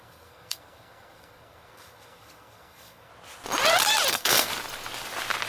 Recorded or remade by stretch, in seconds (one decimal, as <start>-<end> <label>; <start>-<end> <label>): 0.0-3.1 remade; 3.1-4.1 recorded; 4.1-4.5 remade; 4.5-5.5 recorded